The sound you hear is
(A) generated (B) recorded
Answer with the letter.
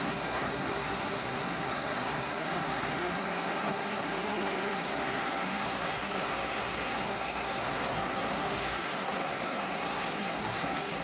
A